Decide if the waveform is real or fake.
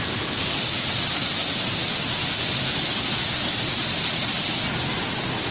real